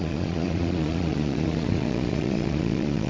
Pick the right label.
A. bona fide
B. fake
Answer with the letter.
B